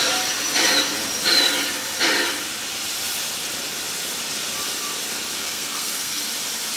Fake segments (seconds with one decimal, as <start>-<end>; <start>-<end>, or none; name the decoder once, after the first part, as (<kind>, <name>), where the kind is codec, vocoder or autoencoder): 5.4-6.2 (codec, SNAC)